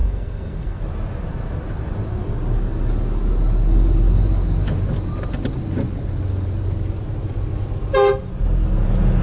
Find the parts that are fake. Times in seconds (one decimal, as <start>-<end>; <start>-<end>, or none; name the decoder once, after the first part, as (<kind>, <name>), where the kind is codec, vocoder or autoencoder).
0.0-0.8 (codec, SNAC)